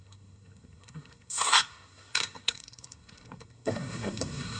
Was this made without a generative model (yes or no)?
no